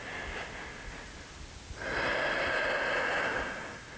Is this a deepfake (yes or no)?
no